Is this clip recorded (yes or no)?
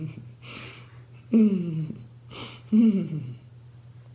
yes